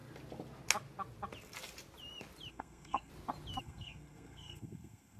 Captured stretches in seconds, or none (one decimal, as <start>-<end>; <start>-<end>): 0.0-2.5; 3.1-3.6